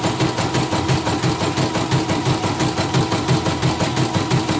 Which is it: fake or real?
real